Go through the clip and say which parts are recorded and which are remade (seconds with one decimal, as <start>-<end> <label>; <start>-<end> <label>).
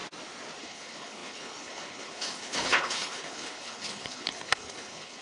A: 0.0-0.6 recorded; 0.6-5.2 remade